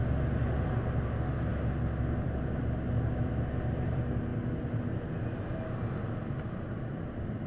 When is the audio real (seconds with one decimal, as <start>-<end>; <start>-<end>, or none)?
0.0-7.5